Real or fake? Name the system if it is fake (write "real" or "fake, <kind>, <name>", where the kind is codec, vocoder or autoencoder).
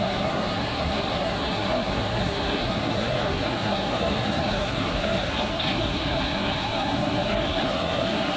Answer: fake, codec, SNAC